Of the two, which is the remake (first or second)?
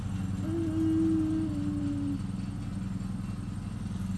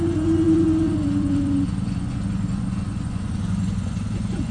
second